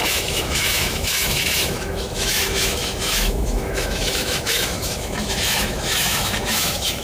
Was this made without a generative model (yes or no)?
no